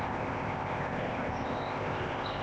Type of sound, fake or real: fake